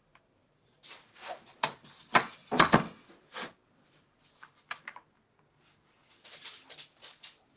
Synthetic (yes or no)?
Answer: no